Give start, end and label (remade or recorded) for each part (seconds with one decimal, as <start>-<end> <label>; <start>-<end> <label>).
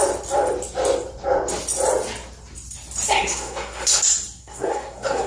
0.0-3.1 recorded; 3.1-4.0 remade; 4.0-4.4 recorded; 4.4-5.3 remade